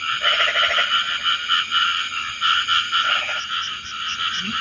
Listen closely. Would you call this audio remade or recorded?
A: recorded